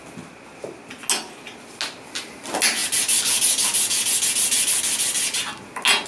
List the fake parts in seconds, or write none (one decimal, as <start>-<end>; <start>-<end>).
none

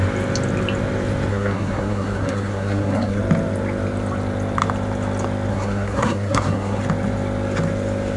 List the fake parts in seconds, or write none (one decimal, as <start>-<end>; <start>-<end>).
1.3-3.2; 5.5-6.8

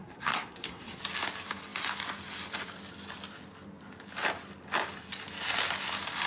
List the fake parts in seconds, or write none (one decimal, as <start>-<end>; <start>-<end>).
0.0-1.0

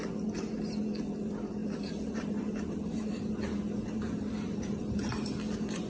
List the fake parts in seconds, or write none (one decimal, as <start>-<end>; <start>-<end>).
1.6-5.1

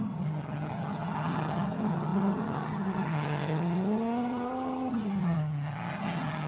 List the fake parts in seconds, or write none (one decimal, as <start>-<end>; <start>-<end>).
0.0-6.5

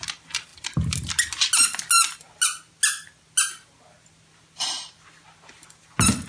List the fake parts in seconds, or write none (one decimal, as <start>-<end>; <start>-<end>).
none

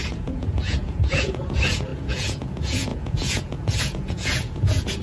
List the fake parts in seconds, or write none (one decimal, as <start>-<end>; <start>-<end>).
0.0-5.0